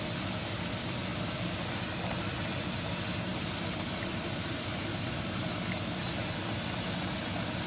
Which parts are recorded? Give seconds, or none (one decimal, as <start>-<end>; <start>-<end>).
0.0-7.7